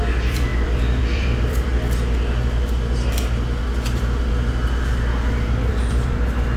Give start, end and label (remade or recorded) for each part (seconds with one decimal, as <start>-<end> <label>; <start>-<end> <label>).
0.0-1.7 remade; 1.7-5.7 recorded; 5.7-6.6 remade